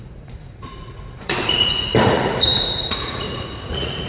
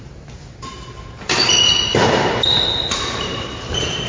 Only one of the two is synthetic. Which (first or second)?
first